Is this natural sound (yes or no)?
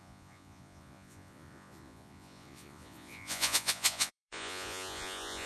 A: no